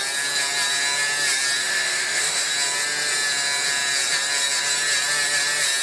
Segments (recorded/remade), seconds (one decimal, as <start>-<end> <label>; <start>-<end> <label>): 0.0-1.6 recorded; 1.6-2.5 remade; 2.5-5.8 recorded